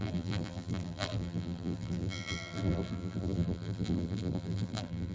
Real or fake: fake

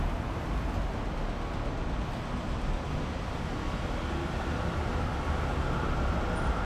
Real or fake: real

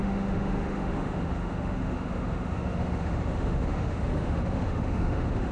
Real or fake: fake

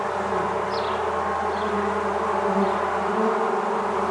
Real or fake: real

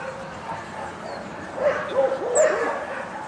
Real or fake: real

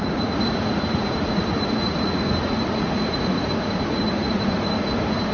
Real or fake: fake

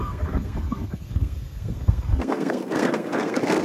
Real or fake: fake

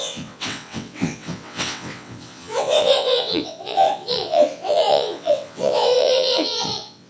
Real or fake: fake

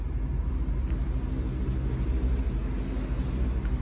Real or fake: real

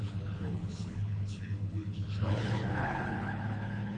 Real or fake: fake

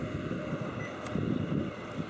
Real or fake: real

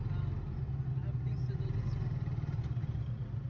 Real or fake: real